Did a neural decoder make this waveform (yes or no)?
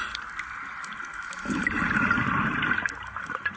no